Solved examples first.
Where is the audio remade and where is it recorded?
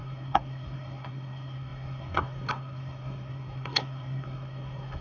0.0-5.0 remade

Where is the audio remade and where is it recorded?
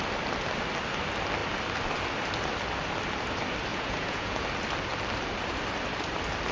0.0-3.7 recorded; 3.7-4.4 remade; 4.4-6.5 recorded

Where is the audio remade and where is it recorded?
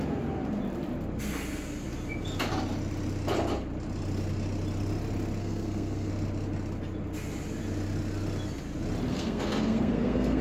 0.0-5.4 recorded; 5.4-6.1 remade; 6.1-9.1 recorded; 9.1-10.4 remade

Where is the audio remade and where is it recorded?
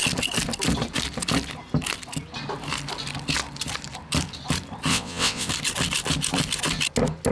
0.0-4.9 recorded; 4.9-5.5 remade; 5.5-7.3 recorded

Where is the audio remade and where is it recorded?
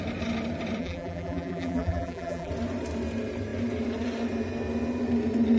0.0-0.8 recorded; 0.8-2.5 remade; 2.5-5.6 recorded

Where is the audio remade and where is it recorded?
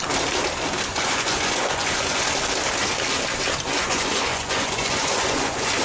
0.0-0.9 recorded; 0.9-2.2 remade; 2.2-3.7 recorded; 3.7-5.8 remade